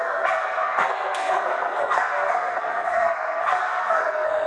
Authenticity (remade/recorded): remade